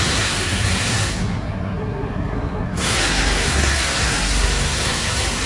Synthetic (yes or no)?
yes